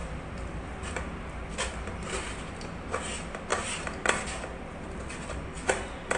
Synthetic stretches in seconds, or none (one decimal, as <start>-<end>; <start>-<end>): 0.0-1.5